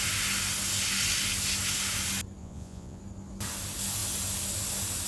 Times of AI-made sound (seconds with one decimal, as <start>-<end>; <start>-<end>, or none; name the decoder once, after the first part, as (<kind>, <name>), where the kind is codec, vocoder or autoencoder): 2.4-3.0 (vocoder, Vocos)